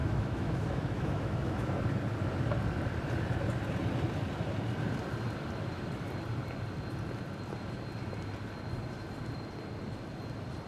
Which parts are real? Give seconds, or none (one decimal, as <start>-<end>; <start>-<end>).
1.8-10.7